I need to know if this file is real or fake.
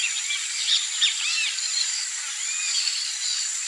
fake